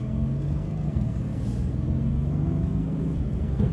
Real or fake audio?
fake